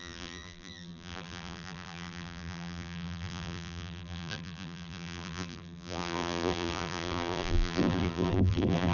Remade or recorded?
remade